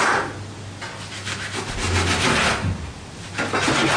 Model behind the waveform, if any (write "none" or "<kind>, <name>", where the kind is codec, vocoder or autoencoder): none